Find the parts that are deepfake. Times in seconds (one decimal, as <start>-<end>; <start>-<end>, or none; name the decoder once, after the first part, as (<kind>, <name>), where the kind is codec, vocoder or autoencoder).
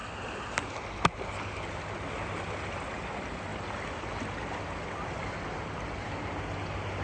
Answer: none